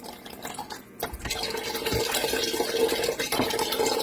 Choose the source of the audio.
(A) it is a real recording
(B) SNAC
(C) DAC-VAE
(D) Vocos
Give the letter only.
A